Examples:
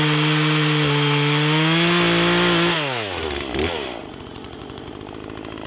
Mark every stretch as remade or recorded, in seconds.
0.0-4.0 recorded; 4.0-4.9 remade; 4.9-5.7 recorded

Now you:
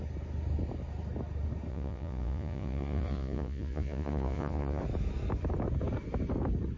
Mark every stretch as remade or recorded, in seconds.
0.0-1.7 recorded; 1.7-4.8 remade; 4.8-6.8 recorded